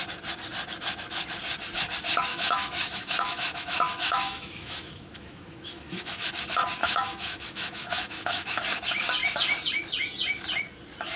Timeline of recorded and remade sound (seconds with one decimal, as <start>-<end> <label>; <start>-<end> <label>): 0.0-2.3 recorded; 2.3-6.3 remade; 6.3-6.8 recorded; 6.8-8.6 remade; 8.6-11.2 recorded